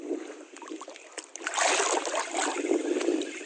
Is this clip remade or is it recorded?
recorded